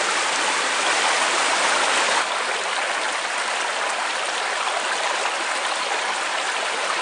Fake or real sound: real